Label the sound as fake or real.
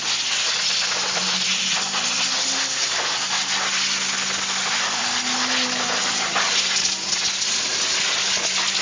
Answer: real